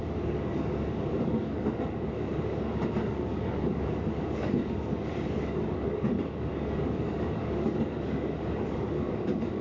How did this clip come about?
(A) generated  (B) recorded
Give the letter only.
A